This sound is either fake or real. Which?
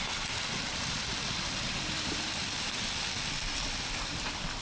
fake